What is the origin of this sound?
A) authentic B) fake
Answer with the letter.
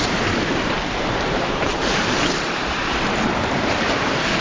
B